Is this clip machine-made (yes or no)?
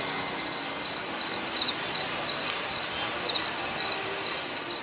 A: no